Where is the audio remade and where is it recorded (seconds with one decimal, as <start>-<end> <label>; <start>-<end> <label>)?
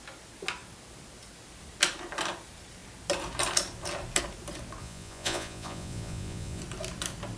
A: 0.0-4.8 recorded; 4.8-6.6 remade; 6.6-7.4 recorded